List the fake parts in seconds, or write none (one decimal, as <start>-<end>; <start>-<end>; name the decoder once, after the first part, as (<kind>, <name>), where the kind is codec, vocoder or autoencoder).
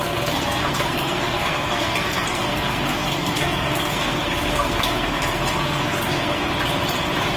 0.0-6.4 (codec, SNAC)